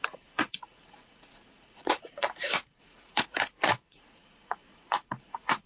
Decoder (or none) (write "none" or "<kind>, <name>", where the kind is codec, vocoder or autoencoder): vocoder, Vocos